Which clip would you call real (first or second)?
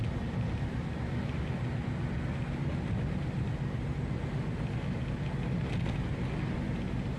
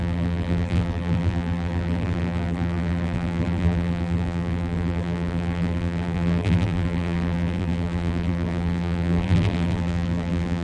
first